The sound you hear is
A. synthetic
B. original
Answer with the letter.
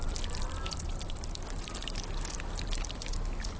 B